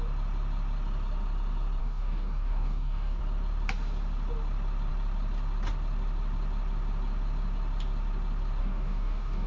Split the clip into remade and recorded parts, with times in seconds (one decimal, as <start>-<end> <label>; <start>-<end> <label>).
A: 0.0-1.8 recorded; 1.8-3.2 remade; 3.2-8.6 recorded; 8.6-9.5 remade